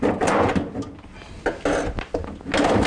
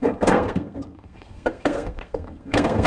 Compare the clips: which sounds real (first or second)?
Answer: first